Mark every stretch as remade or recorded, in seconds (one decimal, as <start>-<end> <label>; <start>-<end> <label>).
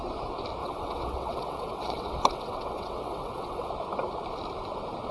0.0-0.6 recorded; 0.6-3.7 remade; 3.7-5.1 recorded